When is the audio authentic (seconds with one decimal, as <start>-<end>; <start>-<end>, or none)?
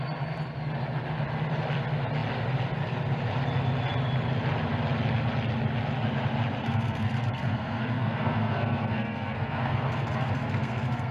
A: 0.0-6.6